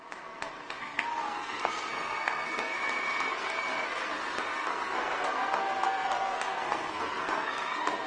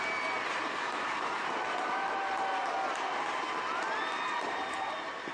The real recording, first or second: second